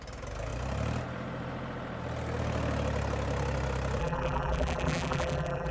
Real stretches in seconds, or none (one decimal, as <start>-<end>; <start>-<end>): 0.0-4.0